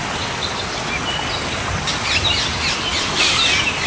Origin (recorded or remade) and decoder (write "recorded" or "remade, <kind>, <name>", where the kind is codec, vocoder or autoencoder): recorded